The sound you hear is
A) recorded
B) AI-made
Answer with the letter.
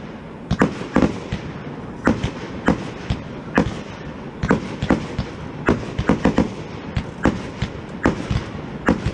A